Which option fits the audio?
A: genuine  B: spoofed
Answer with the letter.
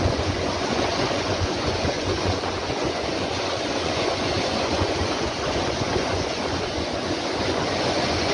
B